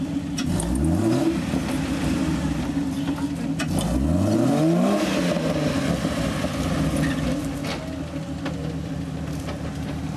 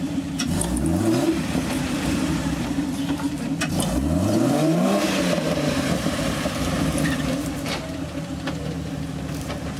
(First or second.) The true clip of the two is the first